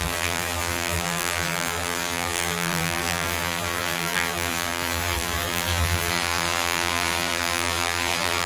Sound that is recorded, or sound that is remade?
remade